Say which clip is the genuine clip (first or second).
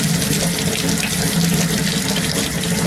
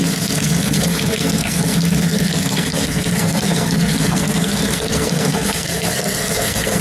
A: first